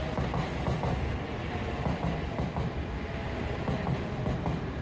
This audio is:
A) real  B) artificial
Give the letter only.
A